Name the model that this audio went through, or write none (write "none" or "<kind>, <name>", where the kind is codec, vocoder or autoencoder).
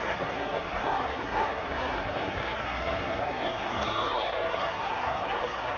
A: codec, SNAC